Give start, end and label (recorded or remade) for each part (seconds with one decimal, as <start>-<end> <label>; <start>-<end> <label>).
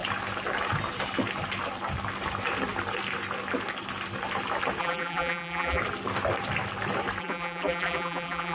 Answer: 0.0-4.8 recorded; 4.8-5.8 remade; 5.8-7.2 recorded; 7.2-8.5 remade